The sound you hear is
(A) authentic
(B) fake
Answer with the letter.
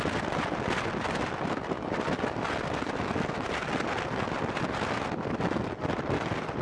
A